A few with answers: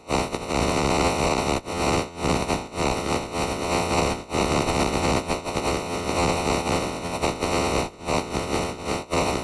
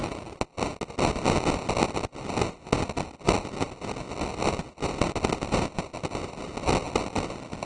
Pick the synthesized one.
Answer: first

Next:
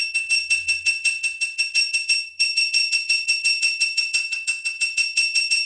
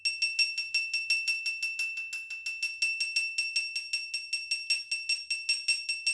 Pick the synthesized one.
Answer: first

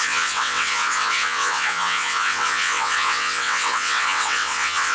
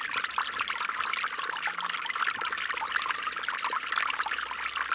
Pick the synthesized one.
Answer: first